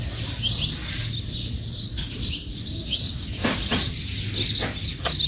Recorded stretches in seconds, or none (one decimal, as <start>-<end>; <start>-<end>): 0.0-2.5; 3.9-5.3